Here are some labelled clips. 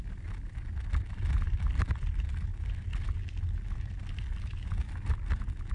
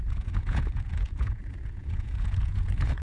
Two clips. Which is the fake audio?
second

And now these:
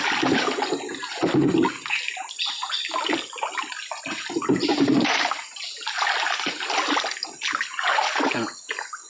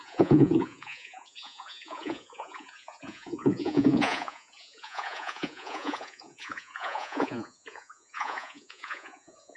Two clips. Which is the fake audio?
second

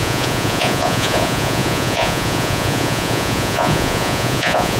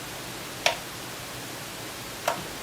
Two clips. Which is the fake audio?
first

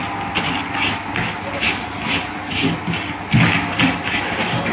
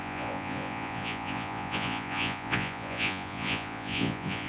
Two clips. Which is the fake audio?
second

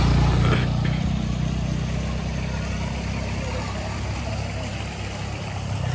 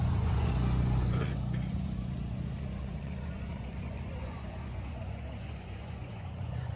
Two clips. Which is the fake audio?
second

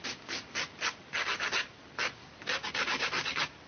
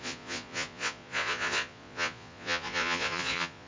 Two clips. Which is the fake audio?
second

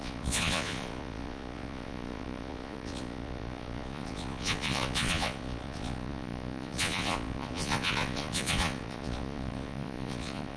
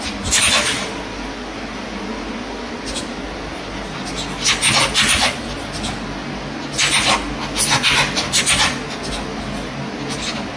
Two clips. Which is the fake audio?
first